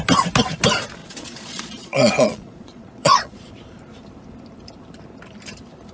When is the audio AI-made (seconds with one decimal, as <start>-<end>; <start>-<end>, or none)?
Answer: 1.0-3.5